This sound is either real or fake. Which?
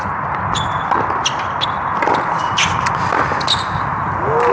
real